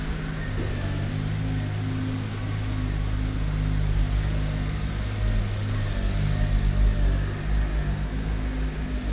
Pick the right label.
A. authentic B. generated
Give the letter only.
A